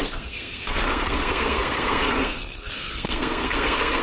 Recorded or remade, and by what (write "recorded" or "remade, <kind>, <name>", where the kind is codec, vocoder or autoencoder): remade, codec, SNAC